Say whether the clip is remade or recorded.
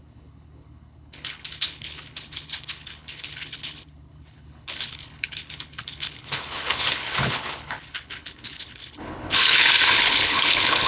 remade